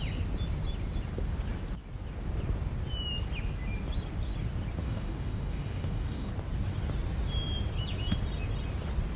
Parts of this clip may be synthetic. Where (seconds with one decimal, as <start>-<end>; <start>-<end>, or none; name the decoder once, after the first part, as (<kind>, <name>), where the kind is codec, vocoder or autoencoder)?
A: 4.8-6.3 (codec, DAC)